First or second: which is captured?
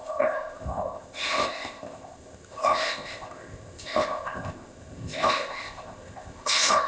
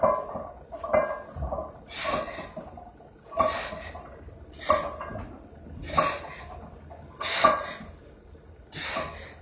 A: second